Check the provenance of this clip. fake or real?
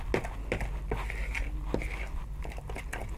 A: real